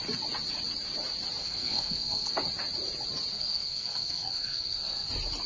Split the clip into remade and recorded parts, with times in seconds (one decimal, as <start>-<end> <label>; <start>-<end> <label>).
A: 0.0-1.4 recorded; 1.4-2.3 remade; 2.3-3.3 recorded; 3.3-5.1 remade; 5.1-5.5 recorded